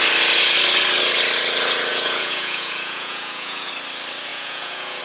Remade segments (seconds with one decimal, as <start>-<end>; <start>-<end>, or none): 1.9-3.7; 4.3-5.0